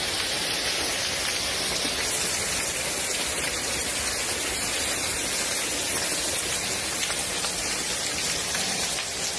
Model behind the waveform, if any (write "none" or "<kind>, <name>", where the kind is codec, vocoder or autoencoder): none